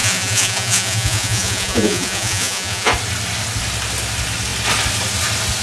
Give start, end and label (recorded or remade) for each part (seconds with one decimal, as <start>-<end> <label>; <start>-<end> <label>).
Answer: 0.0-2.9 remade; 2.9-5.6 recorded